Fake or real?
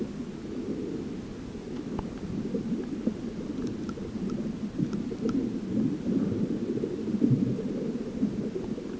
real